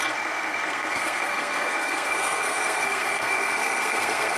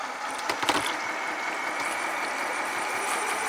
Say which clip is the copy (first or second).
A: first